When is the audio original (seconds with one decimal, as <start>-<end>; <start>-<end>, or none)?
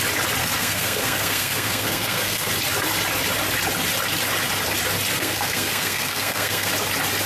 0.0-0.4; 2.5-5.1; 6.7-7.3